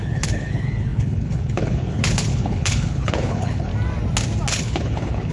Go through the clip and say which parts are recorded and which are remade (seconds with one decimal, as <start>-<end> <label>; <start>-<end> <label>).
0.0-3.7 remade; 3.7-4.5 recorded; 4.5-5.3 remade